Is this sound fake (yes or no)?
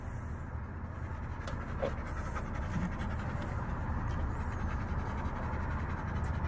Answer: no